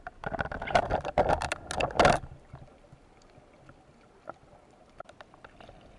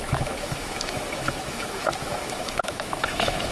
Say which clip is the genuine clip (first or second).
first